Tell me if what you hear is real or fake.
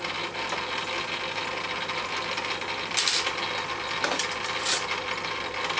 real